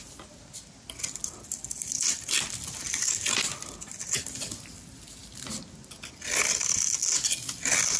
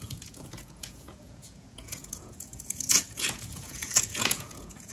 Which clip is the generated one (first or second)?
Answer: second